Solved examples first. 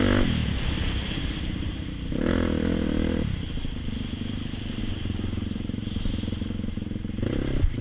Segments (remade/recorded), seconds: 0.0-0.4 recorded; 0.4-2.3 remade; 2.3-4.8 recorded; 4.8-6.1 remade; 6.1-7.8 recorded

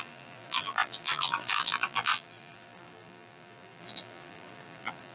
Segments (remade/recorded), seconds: 0.0-5.1 remade

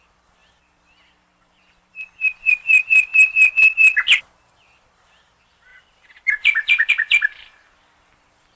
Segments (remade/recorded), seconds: 0.0-3.1 remade; 3.1-4.2 recorded; 4.2-8.6 remade

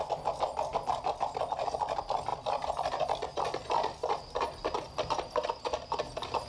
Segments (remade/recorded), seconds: 0.0-6.5 recorded